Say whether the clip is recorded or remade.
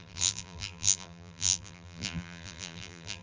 remade